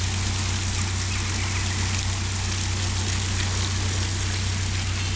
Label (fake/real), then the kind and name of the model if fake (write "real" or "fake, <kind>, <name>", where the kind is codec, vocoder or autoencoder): real